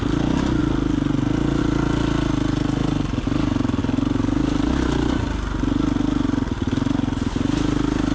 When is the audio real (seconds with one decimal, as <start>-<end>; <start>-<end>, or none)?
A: 0.0-8.1